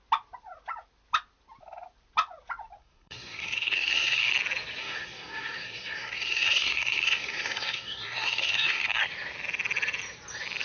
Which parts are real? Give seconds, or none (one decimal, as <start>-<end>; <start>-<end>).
0.0-2.8; 4.3-4.8; 9.0-10.6